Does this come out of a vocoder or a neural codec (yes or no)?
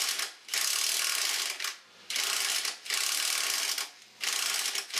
no